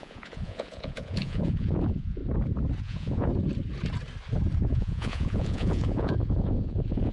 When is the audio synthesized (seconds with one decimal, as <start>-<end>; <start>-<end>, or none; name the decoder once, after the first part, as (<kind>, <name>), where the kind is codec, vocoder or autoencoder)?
0.0-2.2 (vocoder, Vocos); 2.8-3.3; 4.6-7.1